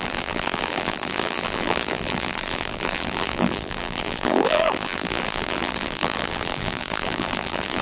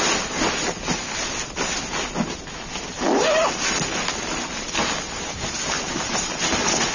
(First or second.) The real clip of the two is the second